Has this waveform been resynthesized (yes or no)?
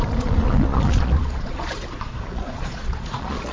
yes